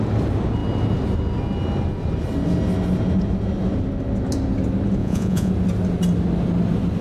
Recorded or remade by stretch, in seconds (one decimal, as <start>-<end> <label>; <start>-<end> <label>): 0.0-5.0 recorded; 5.0-5.5 remade; 5.5-7.0 recorded